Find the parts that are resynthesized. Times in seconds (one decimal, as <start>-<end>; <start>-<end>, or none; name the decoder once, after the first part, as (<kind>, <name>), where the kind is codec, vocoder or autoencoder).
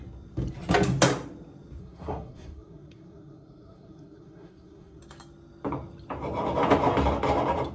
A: 1.8-5.0 (codec, SNAC)